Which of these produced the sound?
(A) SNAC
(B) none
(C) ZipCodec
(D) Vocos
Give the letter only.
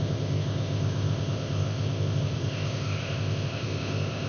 C